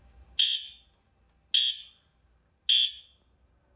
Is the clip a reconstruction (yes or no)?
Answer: no